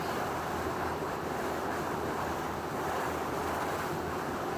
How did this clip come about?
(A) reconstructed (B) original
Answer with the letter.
B